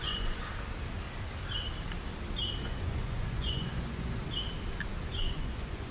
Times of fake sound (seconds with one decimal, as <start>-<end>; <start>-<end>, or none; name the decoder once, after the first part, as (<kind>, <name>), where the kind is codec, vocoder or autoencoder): 0.0-0.5 (vocoder, Vocos); 2.6-4.2; 5.1-5.9